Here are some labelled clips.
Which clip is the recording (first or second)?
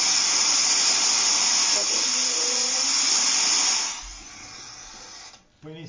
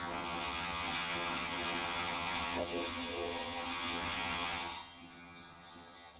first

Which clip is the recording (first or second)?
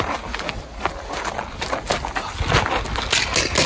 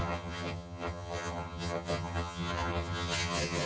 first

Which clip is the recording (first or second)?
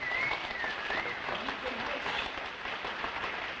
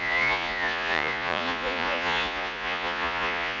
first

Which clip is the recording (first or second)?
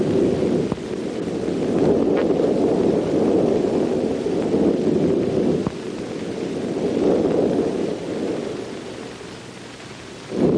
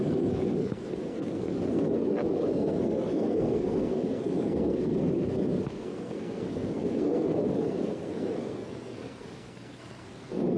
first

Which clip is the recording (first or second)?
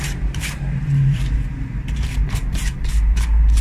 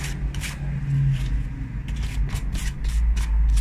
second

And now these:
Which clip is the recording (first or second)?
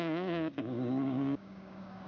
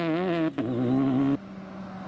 second